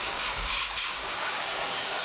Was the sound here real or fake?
fake